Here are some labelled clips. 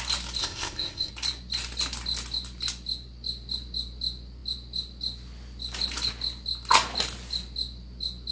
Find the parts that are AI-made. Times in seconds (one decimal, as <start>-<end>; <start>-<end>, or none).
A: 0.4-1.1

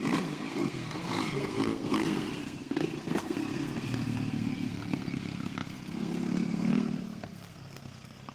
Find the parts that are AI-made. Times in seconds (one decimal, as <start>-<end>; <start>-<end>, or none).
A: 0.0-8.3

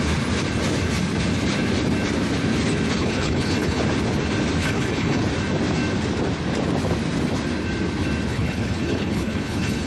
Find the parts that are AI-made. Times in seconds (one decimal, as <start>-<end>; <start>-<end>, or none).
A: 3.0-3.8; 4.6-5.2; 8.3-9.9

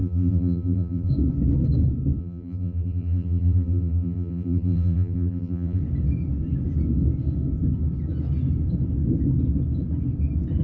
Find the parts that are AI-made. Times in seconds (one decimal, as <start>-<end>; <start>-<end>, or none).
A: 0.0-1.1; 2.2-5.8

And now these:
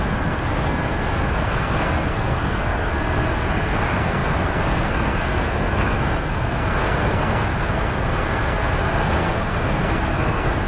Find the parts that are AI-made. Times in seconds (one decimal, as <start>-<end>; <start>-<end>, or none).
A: 0.0-10.7

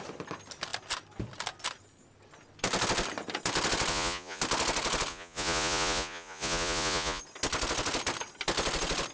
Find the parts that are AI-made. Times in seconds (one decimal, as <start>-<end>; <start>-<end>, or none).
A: 3.9-4.4; 5.1-7.2

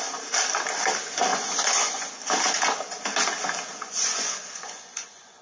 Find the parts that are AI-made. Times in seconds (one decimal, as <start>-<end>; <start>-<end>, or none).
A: 1.3-2.1; 3.7-5.4

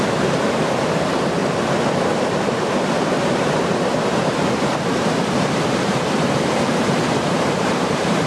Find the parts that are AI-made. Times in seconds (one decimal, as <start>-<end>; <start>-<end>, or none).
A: 0.0-1.4; 2.1-8.3